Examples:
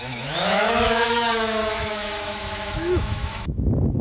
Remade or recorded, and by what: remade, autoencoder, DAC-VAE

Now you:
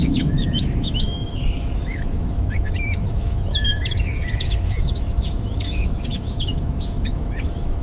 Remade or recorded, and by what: remade, autoencoder, DAC-VAE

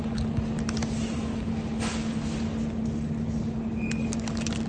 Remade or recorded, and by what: recorded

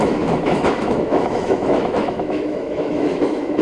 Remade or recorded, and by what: remade, autoencoder, DAC-VAE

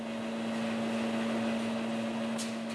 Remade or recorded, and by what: recorded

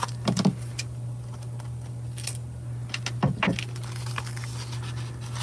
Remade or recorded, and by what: recorded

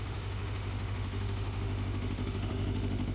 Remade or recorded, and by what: remade, autoencoder, DAC-VAE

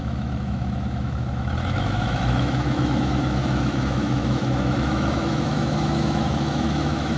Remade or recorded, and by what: remade, autoencoder, DAC-VAE